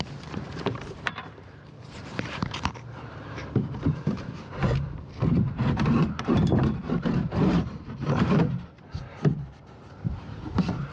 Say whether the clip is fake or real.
fake